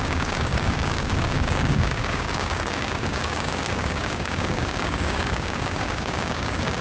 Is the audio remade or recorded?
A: remade